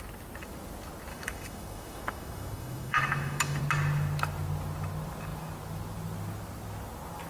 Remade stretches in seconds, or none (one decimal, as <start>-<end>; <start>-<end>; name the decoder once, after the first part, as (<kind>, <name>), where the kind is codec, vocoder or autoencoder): 1.1-3.6 (autoencoder, DAC-VAE)